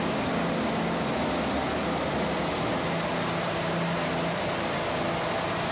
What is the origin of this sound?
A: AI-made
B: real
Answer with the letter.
B